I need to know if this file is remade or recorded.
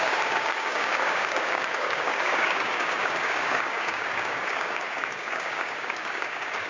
remade